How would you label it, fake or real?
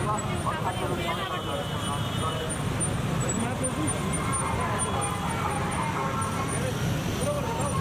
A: real